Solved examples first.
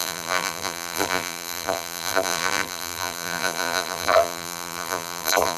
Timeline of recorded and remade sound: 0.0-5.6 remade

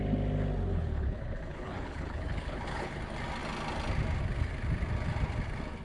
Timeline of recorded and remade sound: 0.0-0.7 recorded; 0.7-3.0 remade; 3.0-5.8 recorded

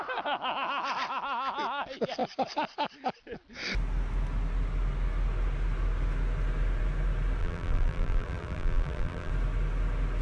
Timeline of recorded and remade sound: 0.0-7.4 recorded; 7.4-9.3 remade; 9.3-10.2 recorded

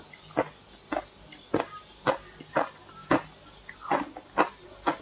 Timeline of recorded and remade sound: 0.0-5.0 recorded

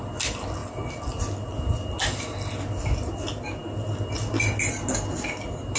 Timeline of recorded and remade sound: 0.0-5.8 recorded

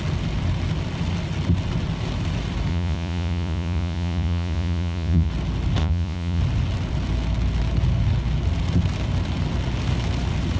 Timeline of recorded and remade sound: 0.0-2.7 recorded; 2.7-5.3 remade; 5.3-5.8 recorded; 5.8-6.4 remade; 6.4-10.6 recorded

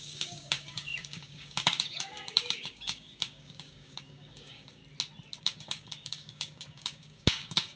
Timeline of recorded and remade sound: 0.0-4.8 remade; 4.8-5.4 recorded; 5.4-7.8 remade

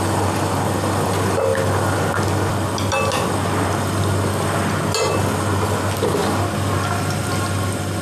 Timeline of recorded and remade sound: 0.0-8.0 recorded